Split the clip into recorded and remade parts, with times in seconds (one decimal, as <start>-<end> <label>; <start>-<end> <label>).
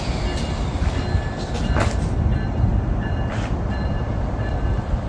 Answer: 0.0-5.1 recorded